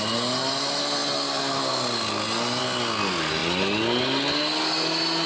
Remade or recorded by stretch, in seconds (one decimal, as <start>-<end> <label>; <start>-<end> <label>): 0.0-5.3 recorded